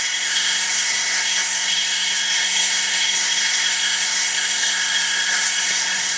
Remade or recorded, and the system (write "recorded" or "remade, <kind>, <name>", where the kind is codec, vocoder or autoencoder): remade, codec, SNAC